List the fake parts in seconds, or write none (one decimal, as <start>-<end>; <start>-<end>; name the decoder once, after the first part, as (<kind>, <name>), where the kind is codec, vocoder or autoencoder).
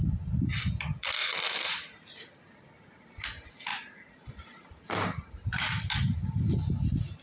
1.2-2.3 (vocoder, BigVGAN v2); 3.7-5.8